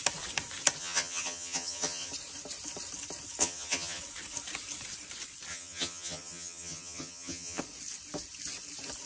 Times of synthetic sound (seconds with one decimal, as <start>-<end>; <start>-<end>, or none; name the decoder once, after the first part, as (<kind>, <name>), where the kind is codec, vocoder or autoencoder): 0.8-2.1 (vocoder, HiFi-GAN); 3.4-4.0; 5.5-7.6